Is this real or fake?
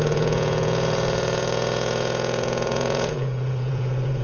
fake